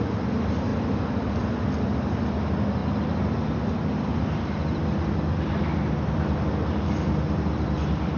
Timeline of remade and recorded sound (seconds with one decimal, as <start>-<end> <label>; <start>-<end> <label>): 0.0-8.2 recorded